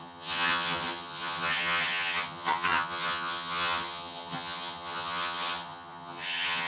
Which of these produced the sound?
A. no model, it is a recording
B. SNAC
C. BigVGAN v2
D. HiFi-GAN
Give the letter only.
D